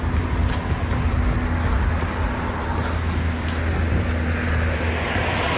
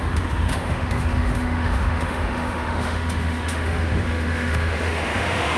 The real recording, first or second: first